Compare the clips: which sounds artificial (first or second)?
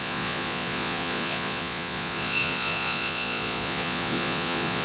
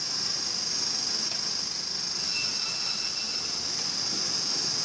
first